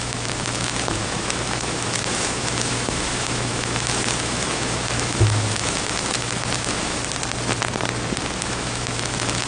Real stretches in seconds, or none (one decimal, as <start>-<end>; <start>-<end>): 7.0-8.4